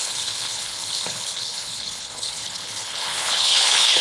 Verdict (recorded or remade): remade